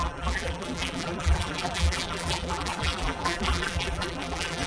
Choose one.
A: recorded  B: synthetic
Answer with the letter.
B